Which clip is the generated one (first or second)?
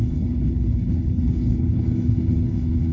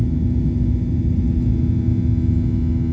first